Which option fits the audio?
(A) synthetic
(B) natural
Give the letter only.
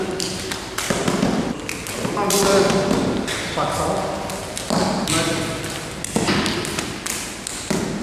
B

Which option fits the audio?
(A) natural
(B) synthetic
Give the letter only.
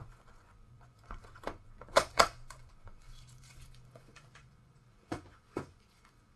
B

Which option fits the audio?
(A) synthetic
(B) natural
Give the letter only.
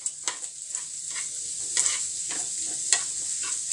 B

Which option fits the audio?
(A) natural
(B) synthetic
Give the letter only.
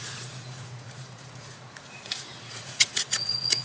B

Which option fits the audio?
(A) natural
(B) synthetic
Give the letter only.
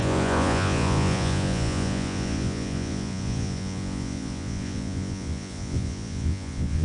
B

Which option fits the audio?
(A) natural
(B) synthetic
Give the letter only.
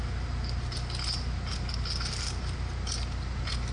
A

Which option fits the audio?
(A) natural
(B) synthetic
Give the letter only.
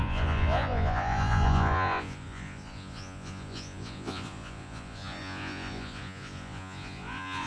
B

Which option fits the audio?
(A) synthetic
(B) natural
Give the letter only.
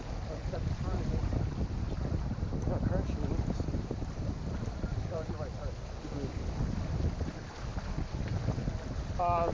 B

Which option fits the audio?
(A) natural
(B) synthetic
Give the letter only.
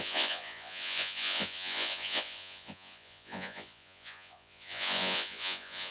B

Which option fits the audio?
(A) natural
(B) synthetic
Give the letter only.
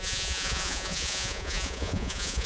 B